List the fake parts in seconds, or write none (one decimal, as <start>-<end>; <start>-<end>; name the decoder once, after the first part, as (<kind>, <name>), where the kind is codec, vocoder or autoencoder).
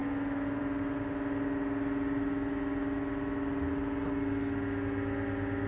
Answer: none